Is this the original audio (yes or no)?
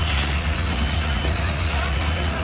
no